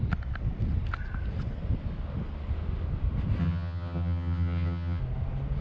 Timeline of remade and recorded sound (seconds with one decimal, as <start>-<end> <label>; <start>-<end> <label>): 0.0-3.4 recorded; 3.4-5.0 remade; 5.0-5.6 recorded